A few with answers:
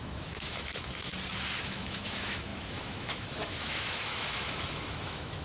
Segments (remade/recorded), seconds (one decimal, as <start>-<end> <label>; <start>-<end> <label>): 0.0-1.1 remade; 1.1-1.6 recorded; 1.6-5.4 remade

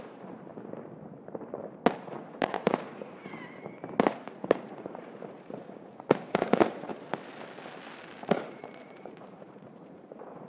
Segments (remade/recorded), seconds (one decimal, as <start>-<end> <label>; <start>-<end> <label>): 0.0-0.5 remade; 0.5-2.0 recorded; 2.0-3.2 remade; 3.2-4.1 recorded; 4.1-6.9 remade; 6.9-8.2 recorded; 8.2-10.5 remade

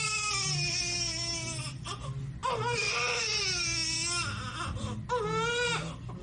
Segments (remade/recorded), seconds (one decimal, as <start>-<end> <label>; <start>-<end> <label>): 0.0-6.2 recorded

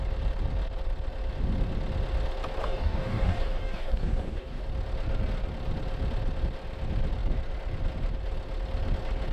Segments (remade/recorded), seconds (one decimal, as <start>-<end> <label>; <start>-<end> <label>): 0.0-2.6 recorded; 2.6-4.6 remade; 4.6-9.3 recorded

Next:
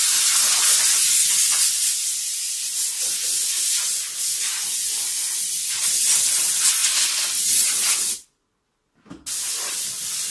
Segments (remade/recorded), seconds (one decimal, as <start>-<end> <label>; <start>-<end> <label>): 0.0-10.3 recorded

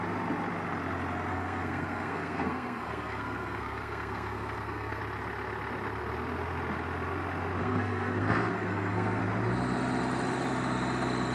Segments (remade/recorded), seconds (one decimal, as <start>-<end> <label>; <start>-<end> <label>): 0.0-1.3 recorded; 1.3-5.0 remade; 5.0-7.6 recorded; 7.6-9.2 remade; 9.2-11.3 recorded

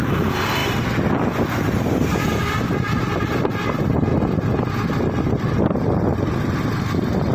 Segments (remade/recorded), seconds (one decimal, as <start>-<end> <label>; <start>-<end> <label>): 0.0-7.3 recorded

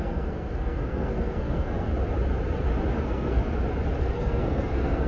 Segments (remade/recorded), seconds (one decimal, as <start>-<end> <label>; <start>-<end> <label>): 0.0-1.9 remade; 1.9-3.0 recorded; 3.0-3.4 remade; 3.4-4.0 recorded; 4.0-5.1 remade